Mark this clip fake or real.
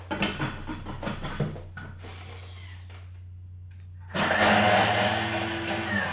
real